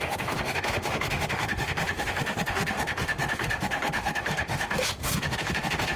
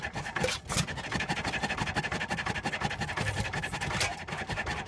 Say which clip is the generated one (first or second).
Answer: first